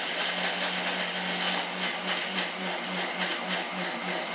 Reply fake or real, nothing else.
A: real